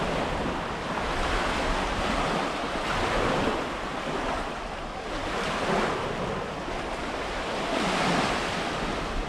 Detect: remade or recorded recorded